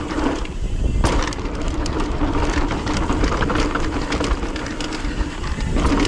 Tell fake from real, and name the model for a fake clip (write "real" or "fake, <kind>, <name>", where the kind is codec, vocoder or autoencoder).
real